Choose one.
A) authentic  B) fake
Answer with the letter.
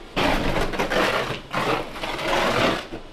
A